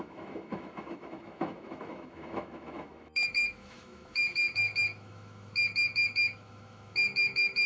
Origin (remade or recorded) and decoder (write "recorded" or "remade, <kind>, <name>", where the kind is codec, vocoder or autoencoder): remade, autoencoder, DAC-VAE